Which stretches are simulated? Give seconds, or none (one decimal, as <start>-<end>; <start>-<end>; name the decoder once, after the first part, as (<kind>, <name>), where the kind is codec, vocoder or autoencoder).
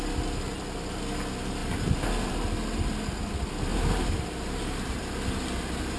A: 3.7-5.0 (vocoder, BigVGAN v2)